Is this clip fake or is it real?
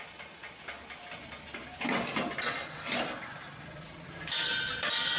fake